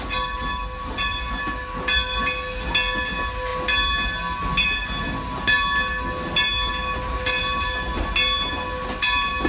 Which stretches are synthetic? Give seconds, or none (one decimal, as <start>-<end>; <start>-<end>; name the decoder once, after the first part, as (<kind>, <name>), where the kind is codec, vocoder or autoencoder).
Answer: none